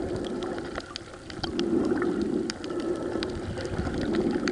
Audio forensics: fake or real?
real